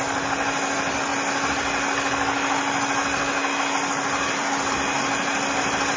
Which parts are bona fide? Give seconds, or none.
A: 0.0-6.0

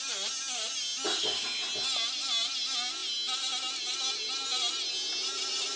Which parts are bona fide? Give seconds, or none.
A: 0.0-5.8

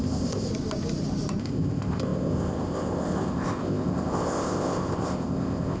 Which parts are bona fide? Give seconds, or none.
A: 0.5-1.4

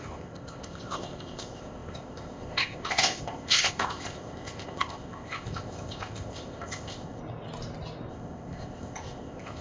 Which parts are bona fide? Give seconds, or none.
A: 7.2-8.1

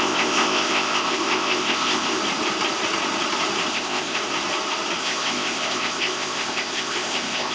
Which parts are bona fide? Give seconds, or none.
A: 2.2-3.7; 4.2-5.0

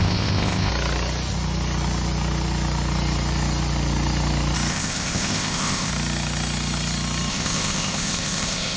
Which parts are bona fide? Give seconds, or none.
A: 0.7-4.7; 5.9-7.3

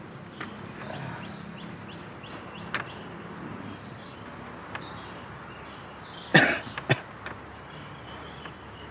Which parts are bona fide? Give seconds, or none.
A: 0.0-8.9